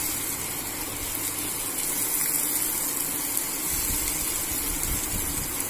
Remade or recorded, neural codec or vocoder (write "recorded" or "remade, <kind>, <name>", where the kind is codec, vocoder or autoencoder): recorded